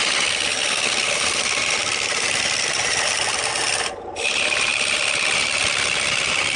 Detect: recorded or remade recorded